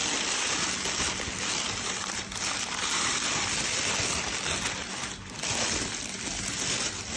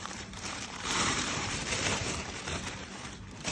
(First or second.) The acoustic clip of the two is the first